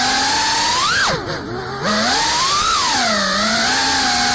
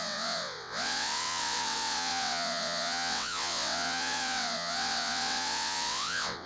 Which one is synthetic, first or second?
second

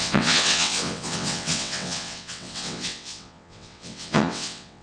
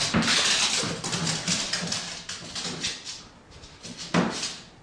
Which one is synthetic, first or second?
first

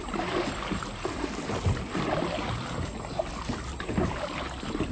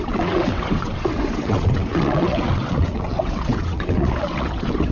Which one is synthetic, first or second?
second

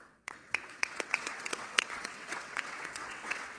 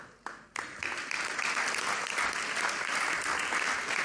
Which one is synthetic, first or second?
first